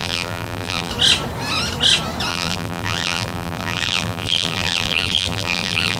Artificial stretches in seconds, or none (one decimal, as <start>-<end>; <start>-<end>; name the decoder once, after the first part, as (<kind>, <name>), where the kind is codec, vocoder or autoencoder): 0.0-0.9 (vocoder, BigVGAN v2); 2.3-6.0